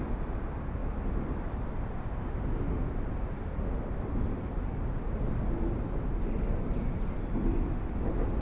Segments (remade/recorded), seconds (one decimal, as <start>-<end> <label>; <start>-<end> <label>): 0.0-8.4 recorded